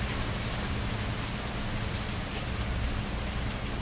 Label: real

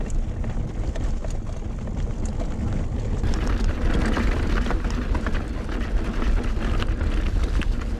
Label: real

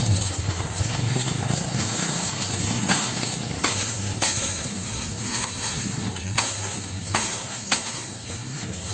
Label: fake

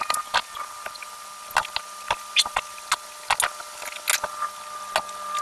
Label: real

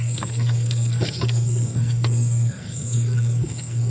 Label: fake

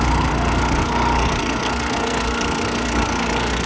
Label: fake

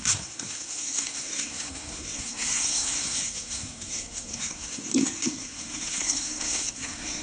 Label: fake